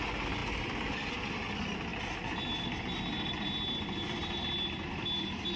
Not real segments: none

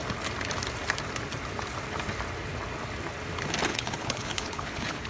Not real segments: 3.7-5.1

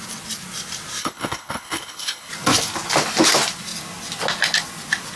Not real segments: 1.0-2.3

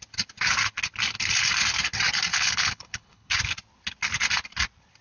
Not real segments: 2.3-3.3